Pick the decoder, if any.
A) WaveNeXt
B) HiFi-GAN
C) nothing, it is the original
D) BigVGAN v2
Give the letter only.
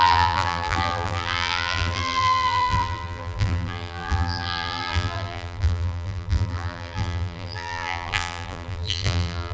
D